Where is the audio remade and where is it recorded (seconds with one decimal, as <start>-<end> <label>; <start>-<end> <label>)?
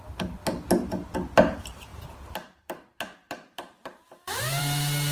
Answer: 0.0-1.9 recorded; 1.9-4.6 remade; 4.6-5.1 recorded